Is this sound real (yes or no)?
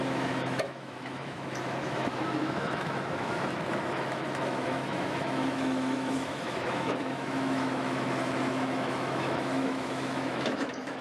no